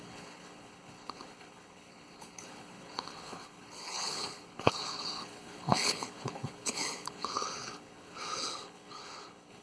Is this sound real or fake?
fake